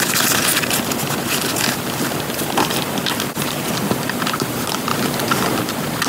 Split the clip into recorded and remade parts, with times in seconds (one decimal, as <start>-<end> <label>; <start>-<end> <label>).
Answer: 0.0-0.4 remade; 0.4-4.0 recorded; 4.0-4.9 remade; 4.9-5.6 recorded; 5.6-6.1 remade